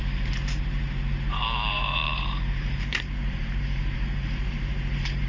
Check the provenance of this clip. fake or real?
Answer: fake